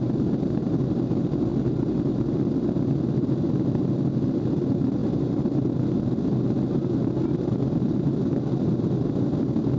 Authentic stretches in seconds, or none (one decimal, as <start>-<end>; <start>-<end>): 0.0-9.8